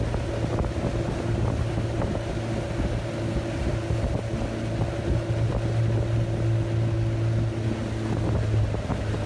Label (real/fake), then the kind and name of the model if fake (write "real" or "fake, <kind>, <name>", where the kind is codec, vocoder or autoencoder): real